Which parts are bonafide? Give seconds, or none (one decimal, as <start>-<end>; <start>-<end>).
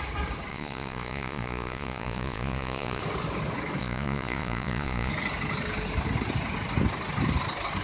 0.0-0.5; 3.0-3.8; 5.1-7.8